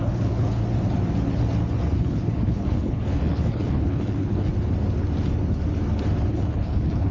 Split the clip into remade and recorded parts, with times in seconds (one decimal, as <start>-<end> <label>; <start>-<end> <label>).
0.0-0.6 remade; 0.6-2.0 recorded; 2.0-4.5 remade; 4.5-6.3 recorded; 6.3-7.1 remade